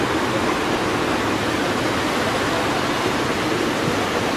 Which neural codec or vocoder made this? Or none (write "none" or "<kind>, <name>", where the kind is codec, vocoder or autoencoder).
none